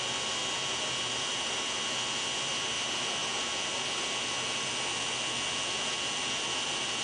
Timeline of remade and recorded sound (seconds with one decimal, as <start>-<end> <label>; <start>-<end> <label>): 0.0-7.0 recorded